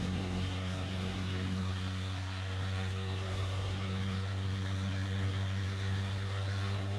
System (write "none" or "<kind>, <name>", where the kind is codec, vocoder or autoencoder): codec, SNAC